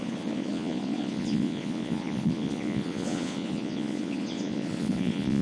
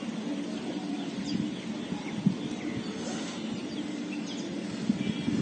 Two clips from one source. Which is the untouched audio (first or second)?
second